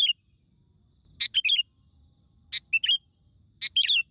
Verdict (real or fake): real